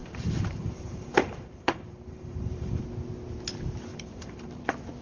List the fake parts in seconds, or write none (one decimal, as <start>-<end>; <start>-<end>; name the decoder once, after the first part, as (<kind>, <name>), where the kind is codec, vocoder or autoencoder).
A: 0.0-2.8 (vocoder, BigVGAN v2); 3.9-4.6